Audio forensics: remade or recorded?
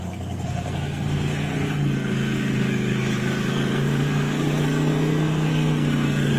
remade